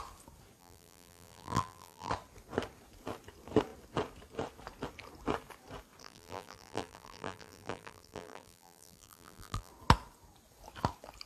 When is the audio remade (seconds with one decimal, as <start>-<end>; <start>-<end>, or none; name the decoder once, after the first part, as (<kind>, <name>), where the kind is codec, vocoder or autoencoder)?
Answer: 0.6-2.1 (vocoder, BigVGAN v2); 6.0-9.7